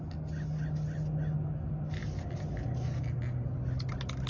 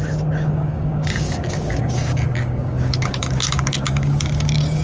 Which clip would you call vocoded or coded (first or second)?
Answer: second